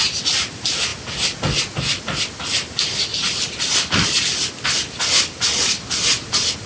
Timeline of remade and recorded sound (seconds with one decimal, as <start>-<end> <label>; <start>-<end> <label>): 0.0-3.1 recorded; 3.1-3.7 remade; 3.7-6.7 recorded